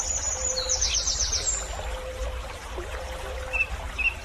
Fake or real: real